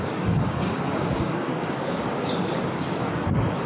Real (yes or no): no